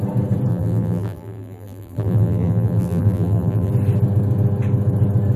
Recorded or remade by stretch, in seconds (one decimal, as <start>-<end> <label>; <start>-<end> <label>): 0.0-0.5 recorded; 0.5-3.7 remade; 3.7-5.4 recorded